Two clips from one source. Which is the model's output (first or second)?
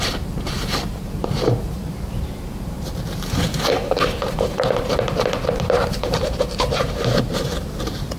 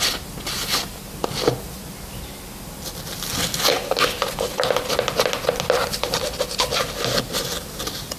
first